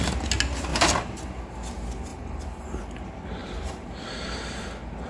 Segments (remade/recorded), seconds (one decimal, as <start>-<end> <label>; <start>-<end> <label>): 0.0-0.7 recorded; 0.7-1.4 remade; 1.4-2.1 recorded; 2.1-2.8 remade; 2.8-3.4 recorded; 3.4-4.6 remade; 4.6-5.1 recorded